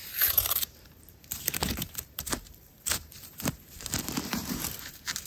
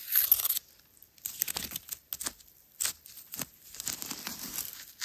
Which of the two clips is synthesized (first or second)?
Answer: first